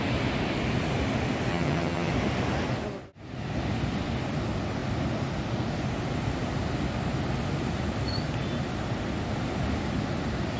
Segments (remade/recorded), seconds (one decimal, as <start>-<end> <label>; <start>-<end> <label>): 0.0-1.5 recorded; 1.5-2.1 remade; 2.1-10.6 recorded